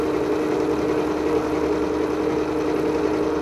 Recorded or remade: recorded